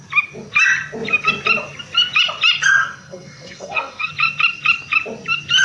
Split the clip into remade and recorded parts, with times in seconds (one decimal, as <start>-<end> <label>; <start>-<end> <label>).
0.0-2.8 recorded; 2.8-4.1 remade; 4.1-5.6 recorded